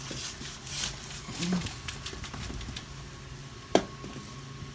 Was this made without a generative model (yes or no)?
yes